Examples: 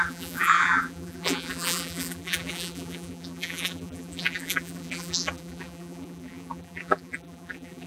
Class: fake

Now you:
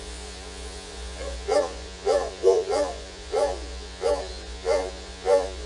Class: fake